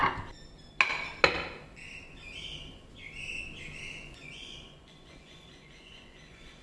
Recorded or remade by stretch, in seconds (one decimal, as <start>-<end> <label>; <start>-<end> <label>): 0.0-4.0 recorded; 4.0-6.6 remade